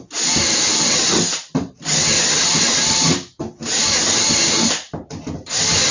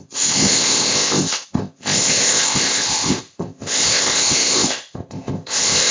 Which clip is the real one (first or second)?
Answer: first